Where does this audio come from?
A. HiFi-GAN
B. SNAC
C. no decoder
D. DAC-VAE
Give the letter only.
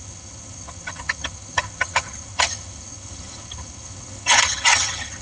A